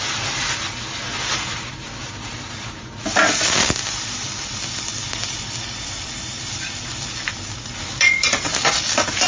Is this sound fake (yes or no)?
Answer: no